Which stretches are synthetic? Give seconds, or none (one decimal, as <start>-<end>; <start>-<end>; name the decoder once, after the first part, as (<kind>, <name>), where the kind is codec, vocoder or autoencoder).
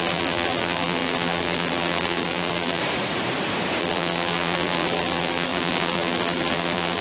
0.0-2.8 (vocoder, BigVGAN v2); 3.8-7.0